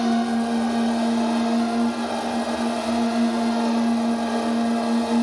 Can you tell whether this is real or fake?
real